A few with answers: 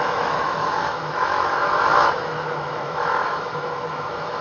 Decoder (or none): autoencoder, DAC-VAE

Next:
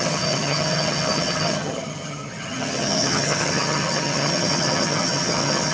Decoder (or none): vocoder, HiFi-GAN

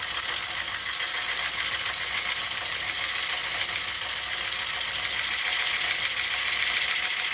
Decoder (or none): none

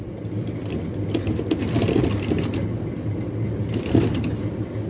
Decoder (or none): none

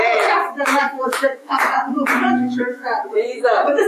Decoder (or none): autoencoder, DAC-VAE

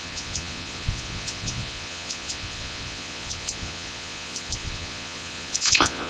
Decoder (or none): vocoder, Vocos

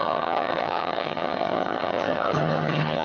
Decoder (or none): vocoder, HiFi-GAN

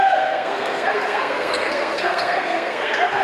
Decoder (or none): codec, SNAC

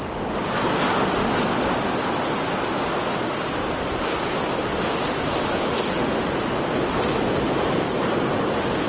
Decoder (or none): none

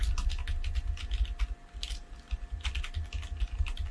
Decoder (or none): none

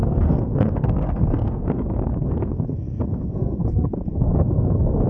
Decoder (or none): codec, SNAC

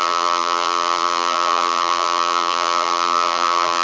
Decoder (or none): vocoder, BigVGAN v2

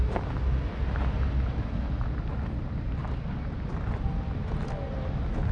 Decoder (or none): none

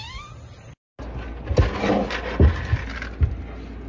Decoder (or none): none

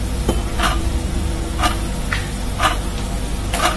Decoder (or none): none